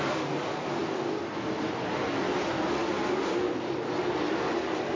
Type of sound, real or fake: real